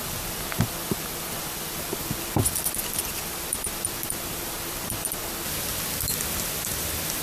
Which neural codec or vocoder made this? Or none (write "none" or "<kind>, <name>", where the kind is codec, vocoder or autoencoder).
vocoder, BigVGAN v2